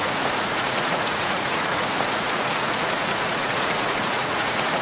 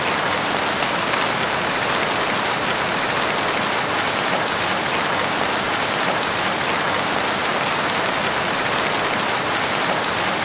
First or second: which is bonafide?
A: second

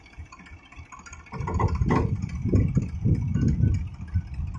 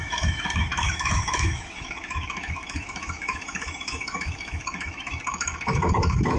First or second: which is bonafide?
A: first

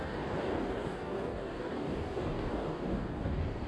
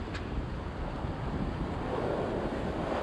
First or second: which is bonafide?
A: second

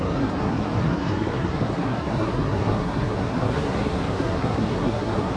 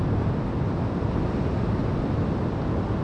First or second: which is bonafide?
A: second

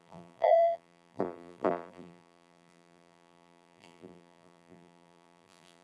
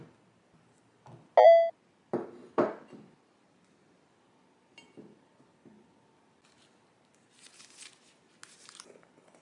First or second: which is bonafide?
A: second